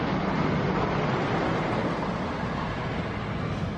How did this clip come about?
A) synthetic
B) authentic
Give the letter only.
B